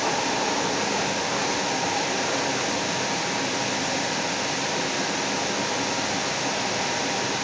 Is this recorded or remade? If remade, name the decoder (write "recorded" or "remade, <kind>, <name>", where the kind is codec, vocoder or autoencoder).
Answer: recorded